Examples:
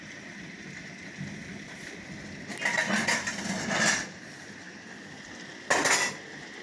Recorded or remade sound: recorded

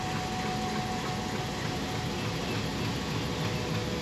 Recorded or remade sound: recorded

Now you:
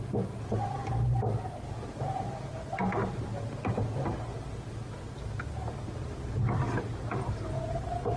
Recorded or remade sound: recorded